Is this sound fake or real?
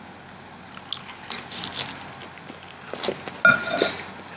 real